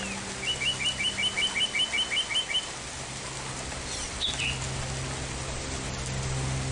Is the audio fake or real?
real